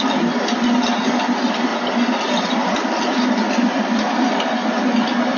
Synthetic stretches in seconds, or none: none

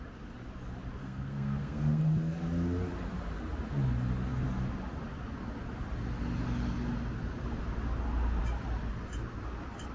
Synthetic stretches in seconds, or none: 1.0-2.0 (codec, SNAC)